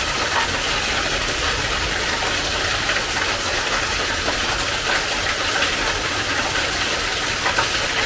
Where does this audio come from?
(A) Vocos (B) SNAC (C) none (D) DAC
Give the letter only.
C